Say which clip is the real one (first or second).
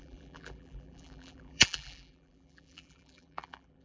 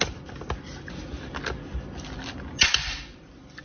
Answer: second